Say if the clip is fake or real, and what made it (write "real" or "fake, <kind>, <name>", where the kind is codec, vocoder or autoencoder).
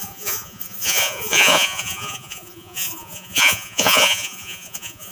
fake, vocoder, Vocos